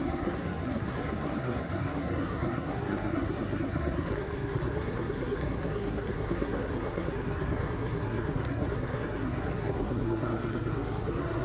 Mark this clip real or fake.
fake